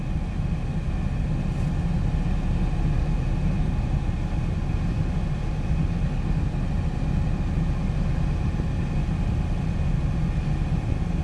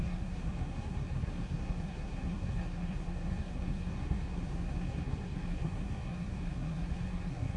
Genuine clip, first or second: first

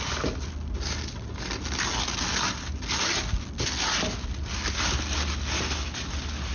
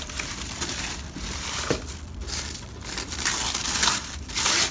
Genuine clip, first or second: first